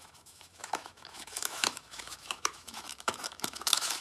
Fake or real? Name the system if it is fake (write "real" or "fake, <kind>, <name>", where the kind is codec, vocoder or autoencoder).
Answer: fake, autoencoder, DAC-VAE